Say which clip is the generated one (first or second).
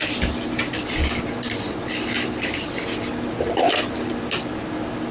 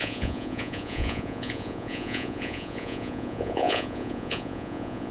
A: second